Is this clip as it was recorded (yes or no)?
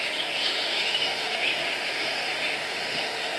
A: no